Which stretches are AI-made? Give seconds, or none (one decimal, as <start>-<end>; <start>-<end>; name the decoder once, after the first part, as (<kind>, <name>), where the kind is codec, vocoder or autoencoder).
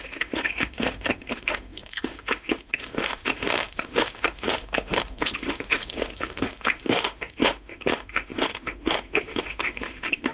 0.0-10.3 (autoencoder, DAC-VAE)